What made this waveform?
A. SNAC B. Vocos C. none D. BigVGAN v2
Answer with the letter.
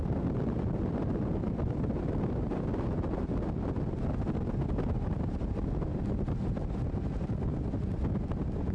C